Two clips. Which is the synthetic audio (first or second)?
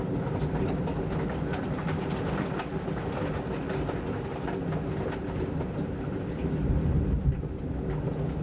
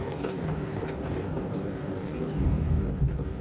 second